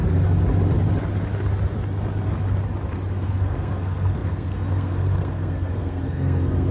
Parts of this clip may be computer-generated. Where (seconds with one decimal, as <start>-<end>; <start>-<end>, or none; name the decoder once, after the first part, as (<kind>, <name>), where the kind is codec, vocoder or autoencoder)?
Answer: 3.1-6.7 (codec, SNAC)